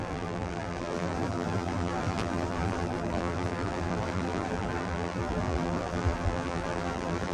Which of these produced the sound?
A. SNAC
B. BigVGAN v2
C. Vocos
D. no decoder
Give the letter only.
B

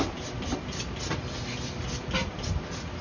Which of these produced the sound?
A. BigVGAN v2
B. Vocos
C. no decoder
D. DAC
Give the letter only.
C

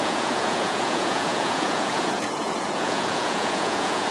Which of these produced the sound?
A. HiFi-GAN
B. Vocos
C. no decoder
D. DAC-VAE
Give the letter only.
B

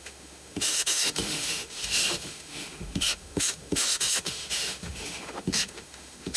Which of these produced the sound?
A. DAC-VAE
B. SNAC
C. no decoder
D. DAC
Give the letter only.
A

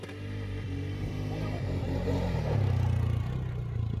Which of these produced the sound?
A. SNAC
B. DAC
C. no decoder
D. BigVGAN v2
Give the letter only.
C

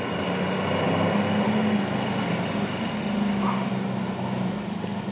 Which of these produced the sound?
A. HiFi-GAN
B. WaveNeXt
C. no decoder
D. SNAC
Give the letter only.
C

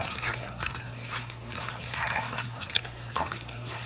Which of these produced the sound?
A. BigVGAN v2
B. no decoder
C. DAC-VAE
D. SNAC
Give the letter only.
D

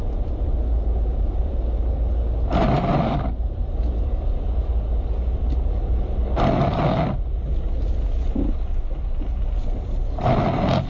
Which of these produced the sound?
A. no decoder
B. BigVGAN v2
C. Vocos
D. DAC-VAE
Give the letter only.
A